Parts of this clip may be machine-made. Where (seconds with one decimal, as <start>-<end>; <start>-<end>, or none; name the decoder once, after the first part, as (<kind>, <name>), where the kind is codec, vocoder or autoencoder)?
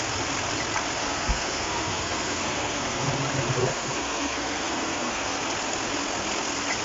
1.0-3.1 (codec, SNAC); 3.6-5.4